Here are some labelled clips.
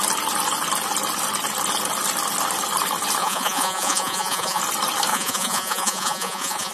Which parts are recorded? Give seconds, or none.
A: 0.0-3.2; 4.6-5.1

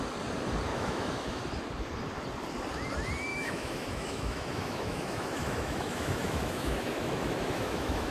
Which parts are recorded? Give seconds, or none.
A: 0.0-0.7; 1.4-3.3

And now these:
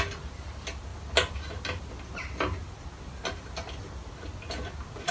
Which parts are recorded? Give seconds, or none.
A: 0.0-5.1

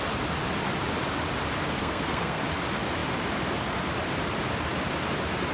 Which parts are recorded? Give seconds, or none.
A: 0.0-1.8; 2.4-5.5